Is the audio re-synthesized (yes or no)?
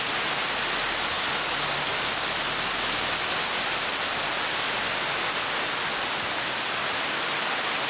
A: no